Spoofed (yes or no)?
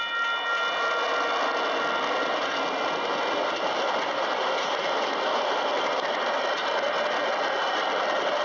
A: no